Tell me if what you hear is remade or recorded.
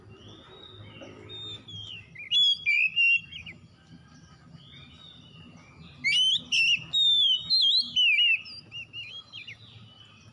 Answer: recorded